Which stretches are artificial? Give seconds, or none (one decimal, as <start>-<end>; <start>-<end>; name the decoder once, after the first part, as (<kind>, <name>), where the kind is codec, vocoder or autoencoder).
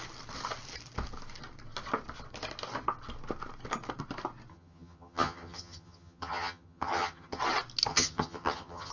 4.5-7.4 (vocoder, HiFi-GAN); 7.9-8.9